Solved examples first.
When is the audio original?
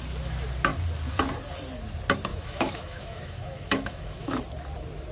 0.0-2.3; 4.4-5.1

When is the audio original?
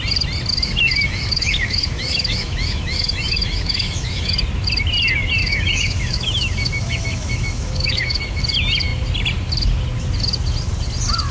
0.0-0.5; 4.4-5.4; 8.4-11.3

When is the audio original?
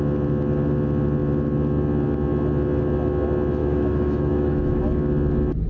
0.0-3.6; 4.8-5.7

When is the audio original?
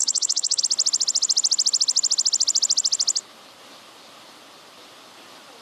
0.6-5.6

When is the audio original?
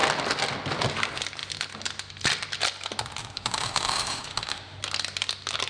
0.0-3.2; 4.8-5.7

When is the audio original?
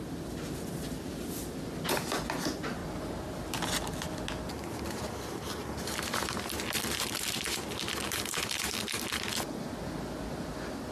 0.0-10.9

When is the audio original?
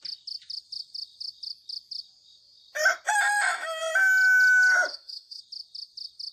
0.0-4.9; 5.4-6.3